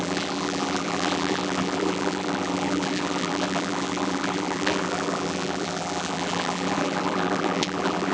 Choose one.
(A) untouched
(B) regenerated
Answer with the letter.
B